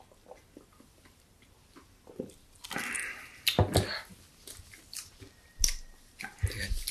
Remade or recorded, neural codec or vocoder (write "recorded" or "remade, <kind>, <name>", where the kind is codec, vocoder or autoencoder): recorded